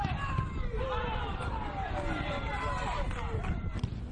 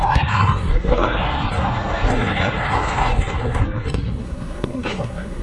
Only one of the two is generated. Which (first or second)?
second